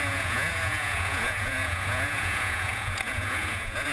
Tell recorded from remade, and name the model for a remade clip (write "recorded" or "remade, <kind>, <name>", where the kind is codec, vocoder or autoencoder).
remade, vocoder, Vocos